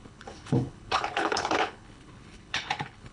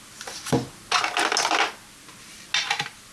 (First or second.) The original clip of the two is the second